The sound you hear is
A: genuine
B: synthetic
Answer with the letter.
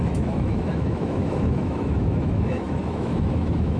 B